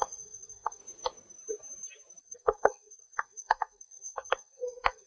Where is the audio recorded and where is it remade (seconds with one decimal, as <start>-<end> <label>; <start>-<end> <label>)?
0.0-0.8 remade; 0.8-2.2 recorded; 2.2-5.1 remade